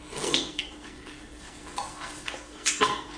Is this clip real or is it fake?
fake